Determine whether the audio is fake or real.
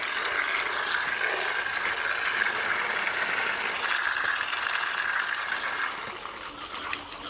real